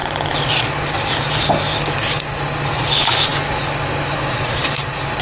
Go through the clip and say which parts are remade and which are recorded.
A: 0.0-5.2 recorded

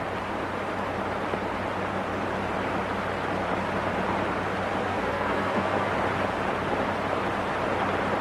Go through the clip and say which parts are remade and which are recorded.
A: 0.0-4.9 recorded; 4.9-5.9 remade; 5.9-8.2 recorded